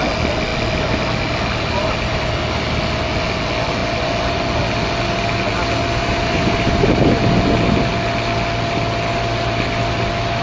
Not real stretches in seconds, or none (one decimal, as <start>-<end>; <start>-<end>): 6.0-7.0